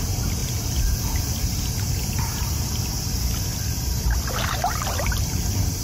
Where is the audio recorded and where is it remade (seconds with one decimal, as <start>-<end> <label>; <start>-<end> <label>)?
0.0-5.8 recorded